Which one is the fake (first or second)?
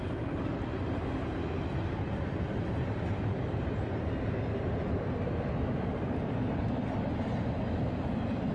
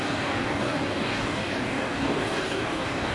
second